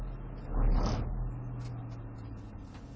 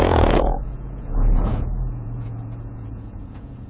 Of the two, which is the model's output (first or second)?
second